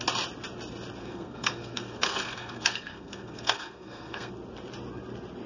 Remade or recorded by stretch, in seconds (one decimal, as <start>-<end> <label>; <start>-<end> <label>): 0.0-1.0 recorded; 1.0-4.3 remade; 4.3-5.5 recorded